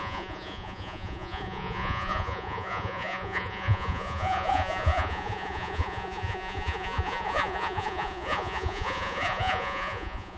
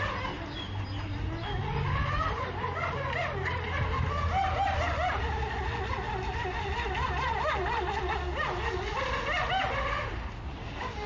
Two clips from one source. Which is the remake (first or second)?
first